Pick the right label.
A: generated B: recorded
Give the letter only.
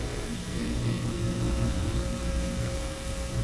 A